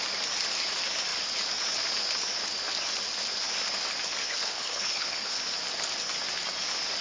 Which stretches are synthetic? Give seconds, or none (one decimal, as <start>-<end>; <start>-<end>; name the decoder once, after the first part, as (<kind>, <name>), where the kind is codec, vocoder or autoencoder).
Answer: 4.2-5.4 (codec, HILCodec)